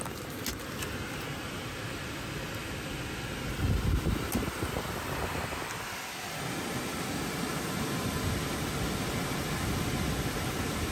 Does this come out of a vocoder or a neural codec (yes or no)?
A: no